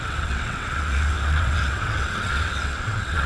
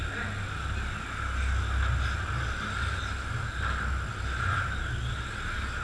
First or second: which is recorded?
second